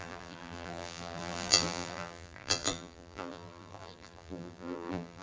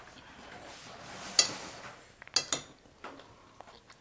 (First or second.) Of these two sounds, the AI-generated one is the first